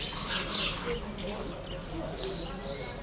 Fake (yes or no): no